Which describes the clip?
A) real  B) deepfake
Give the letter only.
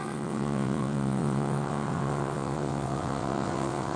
B